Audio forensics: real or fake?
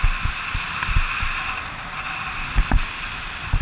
real